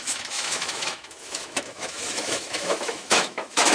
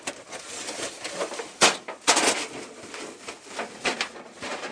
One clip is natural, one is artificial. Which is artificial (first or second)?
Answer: first